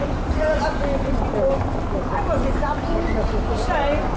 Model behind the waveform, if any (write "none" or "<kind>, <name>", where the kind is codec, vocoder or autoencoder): none